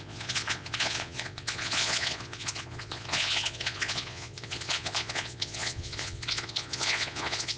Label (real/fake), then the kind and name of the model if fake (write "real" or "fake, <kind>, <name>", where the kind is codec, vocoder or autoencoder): fake, vocoder, Vocos